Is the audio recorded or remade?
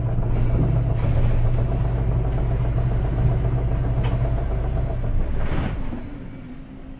recorded